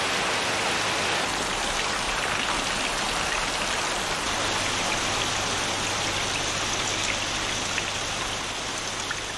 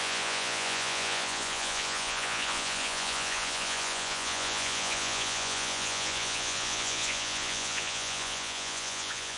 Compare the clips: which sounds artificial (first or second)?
second